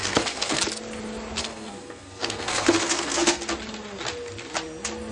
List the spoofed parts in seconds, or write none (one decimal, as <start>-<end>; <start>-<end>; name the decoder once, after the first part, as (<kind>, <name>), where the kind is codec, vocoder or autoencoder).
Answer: 0.0-0.6 (codec, SNAC); 1.4-3.4